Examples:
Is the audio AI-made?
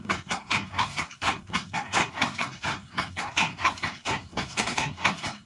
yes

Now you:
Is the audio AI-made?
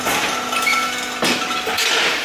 no